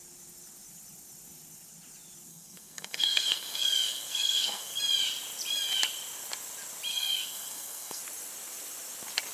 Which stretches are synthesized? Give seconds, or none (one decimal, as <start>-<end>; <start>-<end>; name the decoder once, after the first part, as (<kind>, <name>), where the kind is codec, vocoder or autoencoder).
2.3-4.8 (codec, SNAC); 6.9-8.0